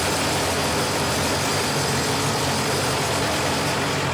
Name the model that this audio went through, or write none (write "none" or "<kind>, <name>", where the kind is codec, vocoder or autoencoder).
none